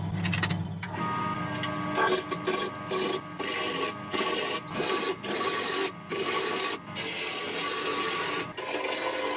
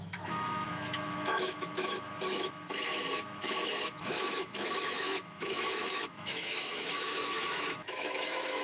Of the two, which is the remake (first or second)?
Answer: second